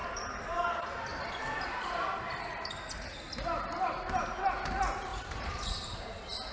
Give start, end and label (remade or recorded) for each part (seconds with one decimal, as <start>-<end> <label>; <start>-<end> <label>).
0.0-0.6 remade; 0.6-1.1 recorded; 1.1-4.4 remade; 4.4-5.1 recorded; 5.1-6.5 remade